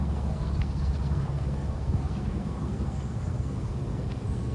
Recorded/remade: remade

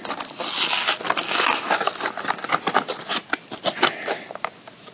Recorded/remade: recorded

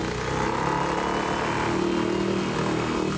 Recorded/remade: recorded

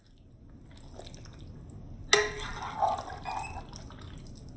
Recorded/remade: recorded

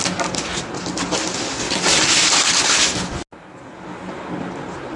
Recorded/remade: recorded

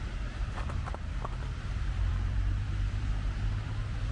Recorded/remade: remade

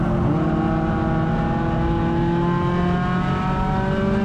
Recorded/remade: recorded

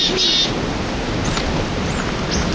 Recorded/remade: recorded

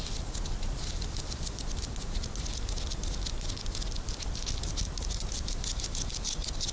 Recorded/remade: recorded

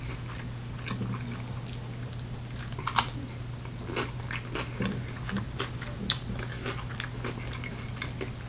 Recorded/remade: recorded